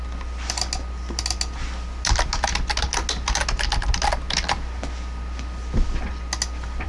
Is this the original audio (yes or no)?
yes